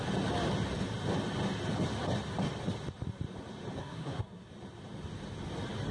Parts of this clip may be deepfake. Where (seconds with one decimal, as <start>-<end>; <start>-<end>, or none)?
3.8-4.5